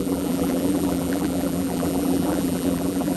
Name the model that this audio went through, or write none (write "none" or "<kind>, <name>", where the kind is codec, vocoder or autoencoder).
vocoder, BigVGAN v2